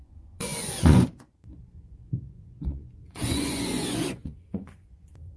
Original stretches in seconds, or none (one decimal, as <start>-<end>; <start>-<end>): none